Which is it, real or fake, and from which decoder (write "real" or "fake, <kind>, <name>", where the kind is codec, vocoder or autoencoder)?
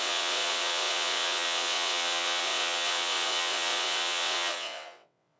fake, vocoder, WaveNeXt